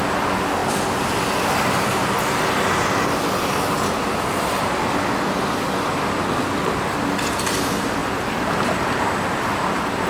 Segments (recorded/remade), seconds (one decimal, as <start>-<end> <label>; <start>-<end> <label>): 0.0-10.1 recorded